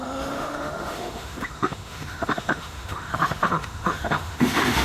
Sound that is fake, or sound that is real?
fake